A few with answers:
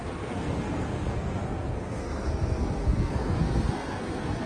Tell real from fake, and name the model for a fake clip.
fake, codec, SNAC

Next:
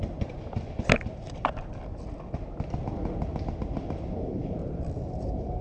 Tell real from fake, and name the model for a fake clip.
real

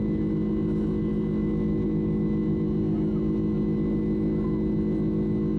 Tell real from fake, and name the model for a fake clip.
real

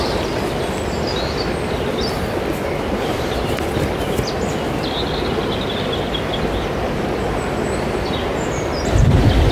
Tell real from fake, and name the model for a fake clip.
real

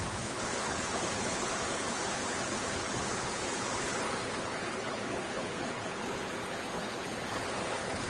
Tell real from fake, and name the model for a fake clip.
fake, codec, HILCodec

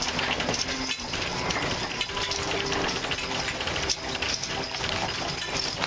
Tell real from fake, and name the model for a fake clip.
real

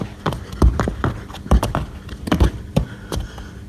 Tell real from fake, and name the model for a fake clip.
fake, vocoder, BigVGAN v2